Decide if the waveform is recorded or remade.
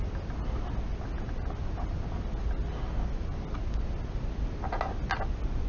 recorded